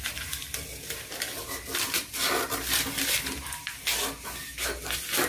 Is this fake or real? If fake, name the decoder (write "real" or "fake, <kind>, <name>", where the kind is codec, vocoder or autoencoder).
real